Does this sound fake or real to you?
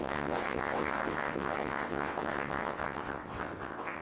fake